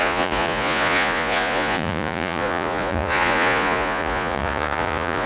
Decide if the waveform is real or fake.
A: fake